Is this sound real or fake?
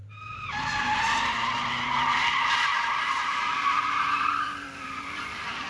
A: fake